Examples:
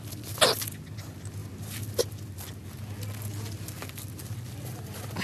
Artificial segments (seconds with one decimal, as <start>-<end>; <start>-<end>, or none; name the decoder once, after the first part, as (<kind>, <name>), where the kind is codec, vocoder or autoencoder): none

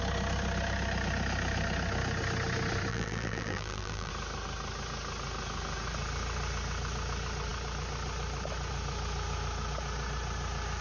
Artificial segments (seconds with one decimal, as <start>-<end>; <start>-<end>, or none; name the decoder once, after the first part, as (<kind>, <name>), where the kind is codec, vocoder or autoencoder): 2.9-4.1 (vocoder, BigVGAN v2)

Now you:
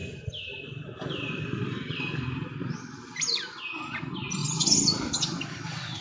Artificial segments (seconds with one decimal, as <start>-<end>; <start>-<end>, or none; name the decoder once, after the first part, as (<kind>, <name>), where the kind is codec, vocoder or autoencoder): 0.0-3.6 (vocoder, BigVGAN v2); 4.4-5.1